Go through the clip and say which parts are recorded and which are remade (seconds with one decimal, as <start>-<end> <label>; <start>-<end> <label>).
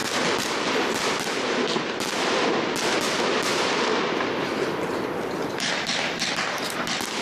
0.0-0.7 remade; 0.7-3.5 recorded; 3.5-6.4 remade; 6.4-7.2 recorded